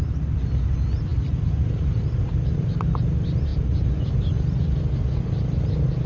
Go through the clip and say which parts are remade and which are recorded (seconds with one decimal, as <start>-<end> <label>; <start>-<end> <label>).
0.0-6.1 recorded